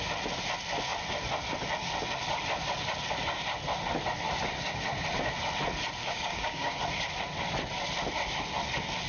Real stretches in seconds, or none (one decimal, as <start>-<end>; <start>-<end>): 0.0-6.0; 6.8-9.1